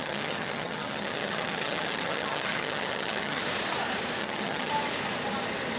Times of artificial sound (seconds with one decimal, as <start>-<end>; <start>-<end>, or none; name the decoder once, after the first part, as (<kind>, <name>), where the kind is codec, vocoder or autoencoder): 0.0-3.4 (vocoder, HiFi-GAN); 4.2-4.7